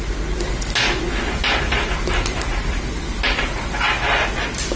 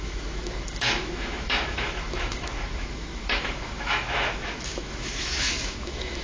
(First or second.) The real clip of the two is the first